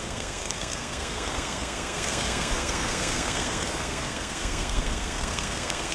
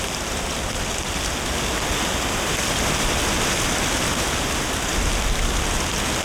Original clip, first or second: second